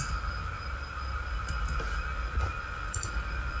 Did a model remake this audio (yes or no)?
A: no